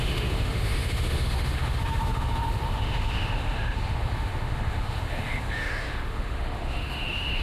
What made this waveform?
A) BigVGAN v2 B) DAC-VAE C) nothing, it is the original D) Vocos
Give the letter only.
B